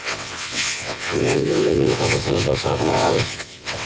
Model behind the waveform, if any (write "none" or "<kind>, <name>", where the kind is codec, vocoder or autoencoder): vocoder, WaveNeXt